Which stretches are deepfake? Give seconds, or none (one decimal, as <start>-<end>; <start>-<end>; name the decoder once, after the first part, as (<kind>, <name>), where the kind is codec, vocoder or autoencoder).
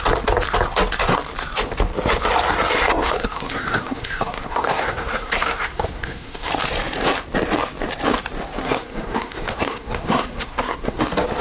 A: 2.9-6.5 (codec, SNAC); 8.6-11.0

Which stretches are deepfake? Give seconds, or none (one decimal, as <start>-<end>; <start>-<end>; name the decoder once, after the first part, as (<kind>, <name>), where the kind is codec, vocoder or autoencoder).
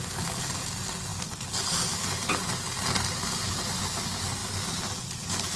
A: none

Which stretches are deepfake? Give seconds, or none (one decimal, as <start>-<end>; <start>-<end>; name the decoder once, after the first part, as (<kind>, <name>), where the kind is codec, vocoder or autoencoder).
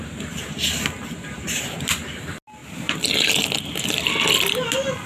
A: none